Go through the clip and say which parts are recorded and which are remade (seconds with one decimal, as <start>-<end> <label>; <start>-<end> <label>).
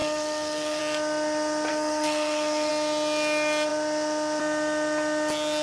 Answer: 0.0-0.8 remade; 0.8-1.7 recorded; 1.7-2.7 remade; 2.7-5.6 recorded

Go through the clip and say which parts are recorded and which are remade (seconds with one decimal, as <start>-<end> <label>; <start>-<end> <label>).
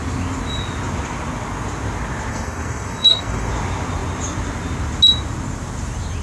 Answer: 0.0-2.3 recorded; 2.3-3.5 remade; 3.5-6.2 recorded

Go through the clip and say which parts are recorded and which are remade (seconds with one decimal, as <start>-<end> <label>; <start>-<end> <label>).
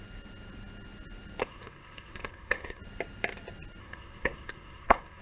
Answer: 0.0-1.4 recorded; 1.4-2.8 remade; 2.8-3.8 recorded; 3.8-5.2 remade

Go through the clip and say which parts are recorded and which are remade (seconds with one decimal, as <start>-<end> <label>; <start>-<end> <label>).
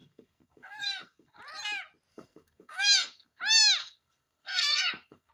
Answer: 0.0-1.4 remade; 1.4-2.1 recorded; 2.1-3.4 remade; 3.4-3.8 recorded; 3.8-5.3 remade